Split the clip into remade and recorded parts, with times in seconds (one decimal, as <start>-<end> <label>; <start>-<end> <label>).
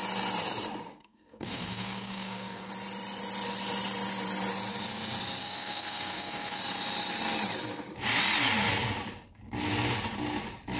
0.0-0.9 recorded; 0.9-2.7 remade; 2.7-5.4 recorded; 5.4-6.6 remade; 6.6-10.8 recorded